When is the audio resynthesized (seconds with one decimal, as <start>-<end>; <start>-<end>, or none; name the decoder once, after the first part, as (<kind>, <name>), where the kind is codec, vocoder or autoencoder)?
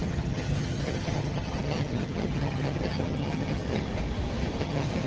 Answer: 0.0-3.9 (vocoder, HiFi-GAN); 4.6-5.1